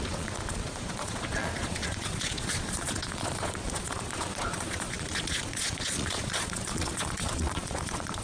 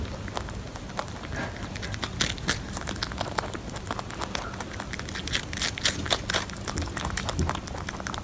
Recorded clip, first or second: second